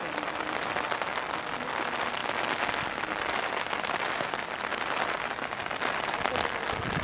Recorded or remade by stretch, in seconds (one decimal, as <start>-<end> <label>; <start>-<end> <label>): 0.0-7.0 recorded